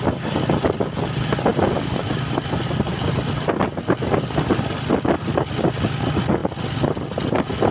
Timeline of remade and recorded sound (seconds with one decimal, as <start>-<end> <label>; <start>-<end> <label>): 0.0-1.5 recorded; 1.5-2.4 remade; 2.4-2.9 recorded; 2.9-3.7 remade; 3.7-7.7 recorded